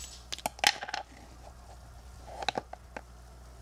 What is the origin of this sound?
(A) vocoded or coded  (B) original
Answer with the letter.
B